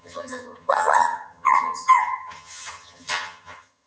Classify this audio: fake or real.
fake